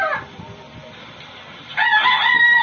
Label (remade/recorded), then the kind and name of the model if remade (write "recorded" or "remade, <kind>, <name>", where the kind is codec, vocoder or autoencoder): recorded